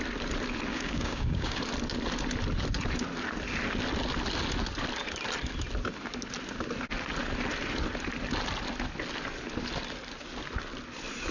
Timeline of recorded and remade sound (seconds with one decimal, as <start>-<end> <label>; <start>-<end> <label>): 0.0-0.7 recorded; 0.7-1.6 remade; 1.6-11.3 recorded